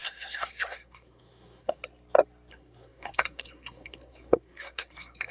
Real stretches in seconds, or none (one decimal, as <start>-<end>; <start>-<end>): 1.8-2.5